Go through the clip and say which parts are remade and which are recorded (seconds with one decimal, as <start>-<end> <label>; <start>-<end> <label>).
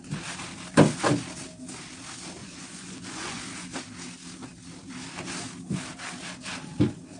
0.0-2.4 recorded; 2.4-3.4 remade; 3.4-7.2 recorded